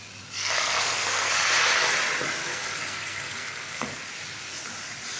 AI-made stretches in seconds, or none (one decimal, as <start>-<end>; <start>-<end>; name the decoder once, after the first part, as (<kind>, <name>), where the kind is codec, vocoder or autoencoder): 0.4-1.3 (codec, SNAC); 2.4-4.0